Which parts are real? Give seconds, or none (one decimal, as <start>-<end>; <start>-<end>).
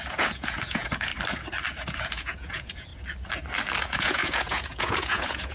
1.1-2.0; 2.9-3.8